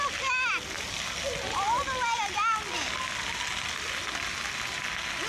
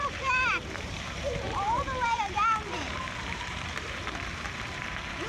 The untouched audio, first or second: first